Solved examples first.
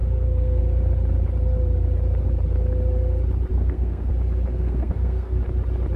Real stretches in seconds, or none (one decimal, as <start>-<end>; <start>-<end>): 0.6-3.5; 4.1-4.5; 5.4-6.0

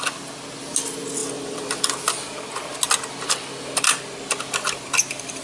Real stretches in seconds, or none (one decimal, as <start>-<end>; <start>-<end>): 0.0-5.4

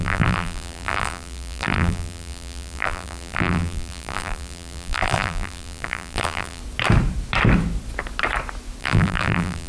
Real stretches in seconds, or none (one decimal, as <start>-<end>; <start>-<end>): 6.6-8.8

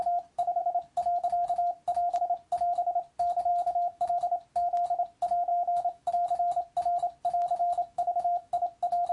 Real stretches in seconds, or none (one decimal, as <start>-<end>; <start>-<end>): 0.0-3.5; 4.1-5.5; 6.1-7.6; 8.5-9.1